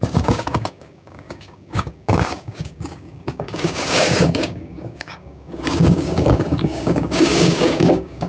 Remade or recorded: remade